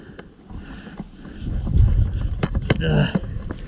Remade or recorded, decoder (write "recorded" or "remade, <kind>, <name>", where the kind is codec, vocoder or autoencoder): recorded